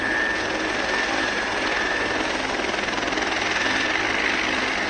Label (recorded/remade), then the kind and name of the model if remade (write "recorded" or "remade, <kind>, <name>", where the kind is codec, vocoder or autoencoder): recorded